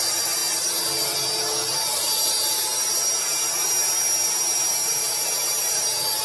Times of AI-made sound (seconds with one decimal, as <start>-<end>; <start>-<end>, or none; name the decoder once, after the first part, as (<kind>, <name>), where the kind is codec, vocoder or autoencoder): none